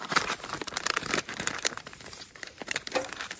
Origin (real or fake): fake